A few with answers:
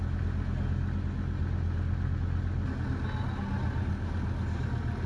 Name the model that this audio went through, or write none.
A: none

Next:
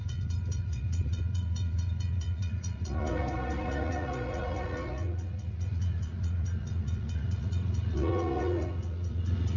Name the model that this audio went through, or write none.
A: vocoder, Vocos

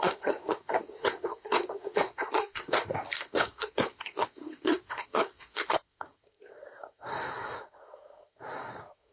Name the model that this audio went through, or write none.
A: codec, SNAC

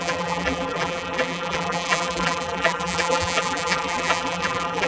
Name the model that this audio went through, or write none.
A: vocoder, BigVGAN v2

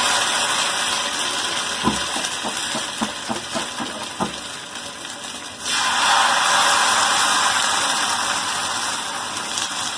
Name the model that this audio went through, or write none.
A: none